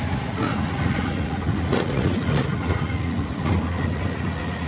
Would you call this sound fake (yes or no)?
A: yes